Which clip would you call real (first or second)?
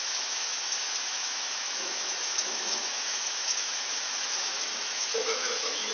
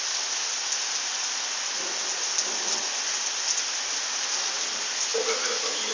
second